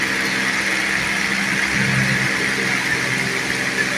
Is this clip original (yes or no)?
yes